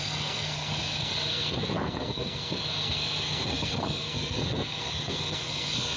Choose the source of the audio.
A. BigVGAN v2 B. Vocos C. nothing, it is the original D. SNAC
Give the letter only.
D